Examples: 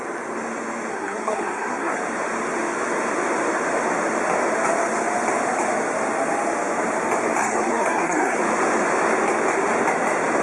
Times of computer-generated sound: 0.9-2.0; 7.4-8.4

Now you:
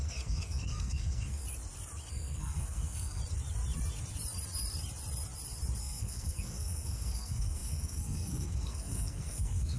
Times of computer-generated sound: 0.0-1.4; 2.1-3.2; 5.8-9.8

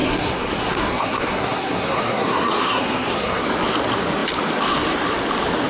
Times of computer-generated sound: 0.0-3.4